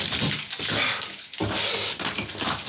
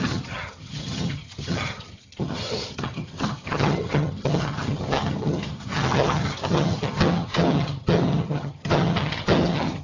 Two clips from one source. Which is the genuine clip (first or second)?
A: first